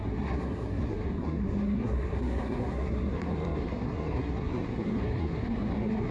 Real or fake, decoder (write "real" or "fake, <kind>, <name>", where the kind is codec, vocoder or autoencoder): fake, codec, SNAC